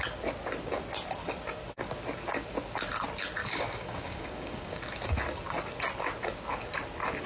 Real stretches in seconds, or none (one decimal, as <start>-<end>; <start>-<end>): 0.0-3.4; 4.8-7.3